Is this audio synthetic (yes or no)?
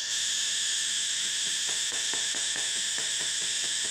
yes